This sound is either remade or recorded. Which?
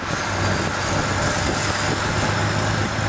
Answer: recorded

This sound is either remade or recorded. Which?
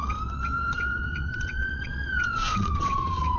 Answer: remade